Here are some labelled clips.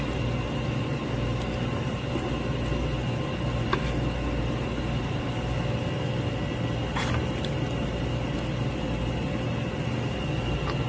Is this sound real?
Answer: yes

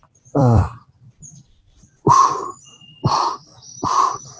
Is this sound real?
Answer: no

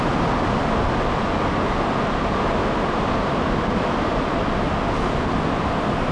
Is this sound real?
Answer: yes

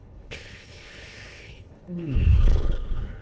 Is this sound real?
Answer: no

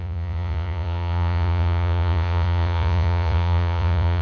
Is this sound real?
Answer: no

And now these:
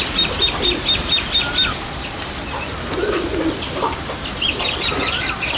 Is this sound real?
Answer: no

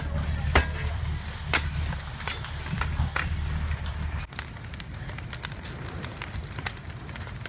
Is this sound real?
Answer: yes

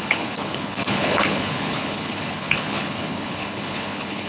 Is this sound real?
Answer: no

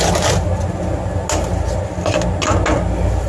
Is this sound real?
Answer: yes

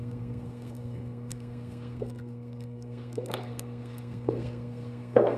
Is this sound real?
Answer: no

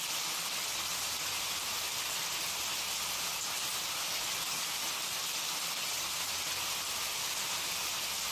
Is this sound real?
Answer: yes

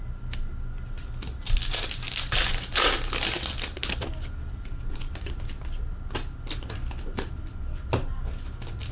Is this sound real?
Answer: yes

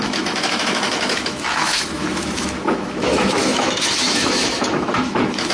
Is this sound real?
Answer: no